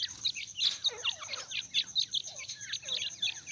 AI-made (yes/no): no